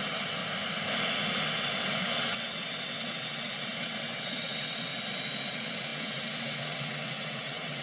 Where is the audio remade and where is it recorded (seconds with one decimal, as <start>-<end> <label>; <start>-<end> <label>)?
0.0-0.4 remade; 0.4-1.6 recorded; 1.6-4.9 remade; 4.9-5.5 recorded; 5.5-7.8 remade